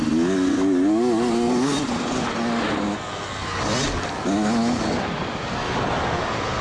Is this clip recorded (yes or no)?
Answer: yes